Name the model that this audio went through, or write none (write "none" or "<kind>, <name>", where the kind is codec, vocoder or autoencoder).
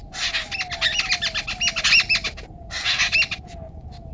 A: none